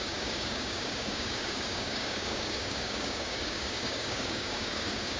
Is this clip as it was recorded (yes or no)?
no